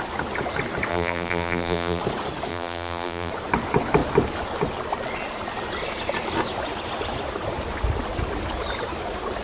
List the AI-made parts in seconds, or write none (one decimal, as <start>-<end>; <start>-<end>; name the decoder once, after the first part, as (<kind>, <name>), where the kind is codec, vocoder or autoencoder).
0.9-2.0 (vocoder, BigVGAN v2); 2.5-3.3